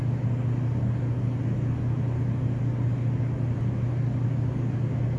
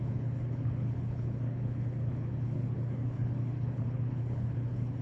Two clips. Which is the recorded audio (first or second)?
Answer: first